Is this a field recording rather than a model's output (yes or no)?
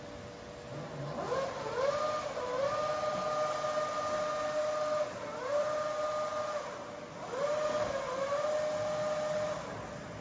yes